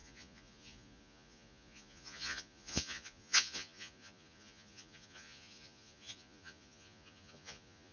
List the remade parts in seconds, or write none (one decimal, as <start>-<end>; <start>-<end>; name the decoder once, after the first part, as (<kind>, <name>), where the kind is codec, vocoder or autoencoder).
0.0-7.9 (vocoder, Vocos)